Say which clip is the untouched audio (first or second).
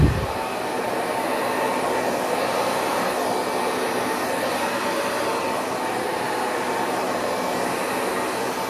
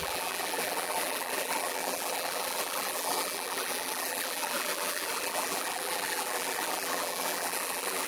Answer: first